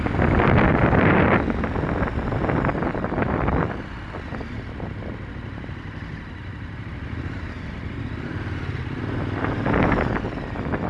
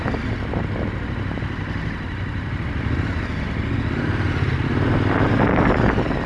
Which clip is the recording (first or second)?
second